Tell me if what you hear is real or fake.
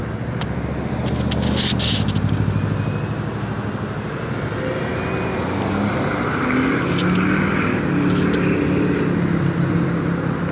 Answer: real